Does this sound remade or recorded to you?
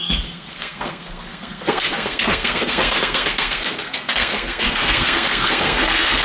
remade